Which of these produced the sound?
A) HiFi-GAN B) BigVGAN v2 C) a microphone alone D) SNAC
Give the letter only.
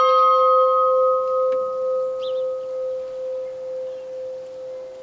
C